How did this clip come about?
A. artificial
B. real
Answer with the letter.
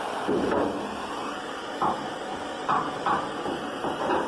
B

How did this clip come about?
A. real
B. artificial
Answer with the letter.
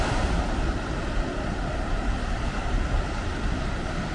A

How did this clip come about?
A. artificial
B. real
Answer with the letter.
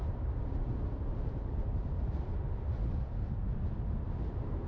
B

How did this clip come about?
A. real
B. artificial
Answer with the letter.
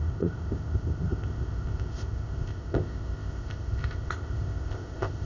B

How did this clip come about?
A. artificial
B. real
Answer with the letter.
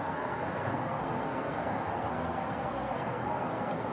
A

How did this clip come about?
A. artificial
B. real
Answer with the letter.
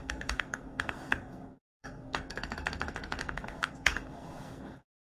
A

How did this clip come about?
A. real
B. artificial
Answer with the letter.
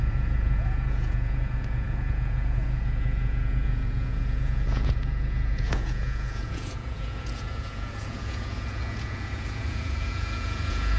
B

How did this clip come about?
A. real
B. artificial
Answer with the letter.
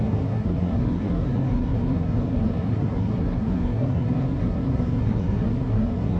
B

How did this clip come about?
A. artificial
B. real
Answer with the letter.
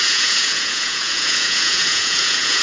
A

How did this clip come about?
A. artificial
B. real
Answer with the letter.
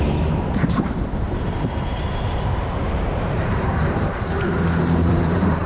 A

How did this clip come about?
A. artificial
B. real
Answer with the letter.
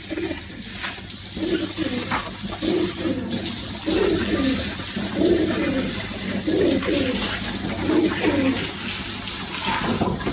B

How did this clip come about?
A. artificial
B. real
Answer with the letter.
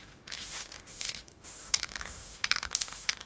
A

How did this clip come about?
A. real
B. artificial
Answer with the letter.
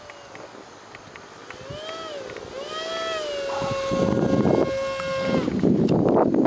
A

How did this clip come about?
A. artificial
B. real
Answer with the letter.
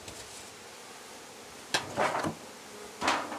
B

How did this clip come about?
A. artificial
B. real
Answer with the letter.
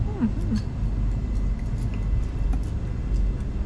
B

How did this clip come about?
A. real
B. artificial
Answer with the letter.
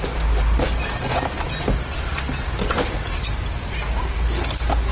A